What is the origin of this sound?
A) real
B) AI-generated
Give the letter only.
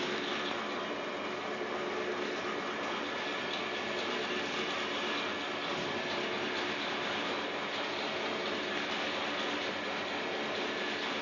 A